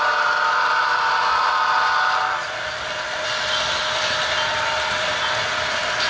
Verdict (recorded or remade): recorded